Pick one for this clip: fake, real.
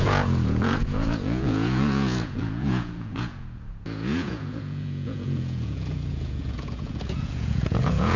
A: fake